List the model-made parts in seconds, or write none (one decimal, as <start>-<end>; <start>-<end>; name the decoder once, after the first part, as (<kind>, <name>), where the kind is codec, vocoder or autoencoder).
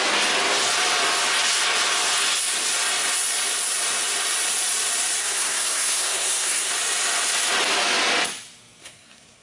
5.2-6.7 (codec, SNAC); 8.8-9.4